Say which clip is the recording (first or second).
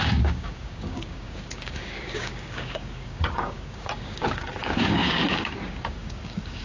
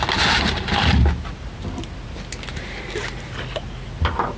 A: second